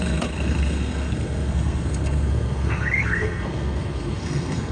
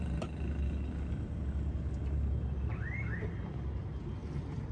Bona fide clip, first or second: second